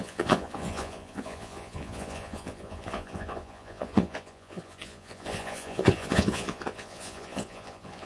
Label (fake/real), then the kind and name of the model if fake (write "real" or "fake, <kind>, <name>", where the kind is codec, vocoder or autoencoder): fake, vocoder, Vocos